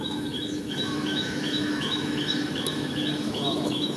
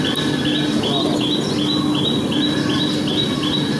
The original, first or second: second